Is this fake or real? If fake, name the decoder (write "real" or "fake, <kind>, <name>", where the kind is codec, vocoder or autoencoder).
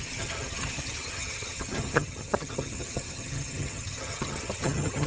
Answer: fake, vocoder, HiFi-GAN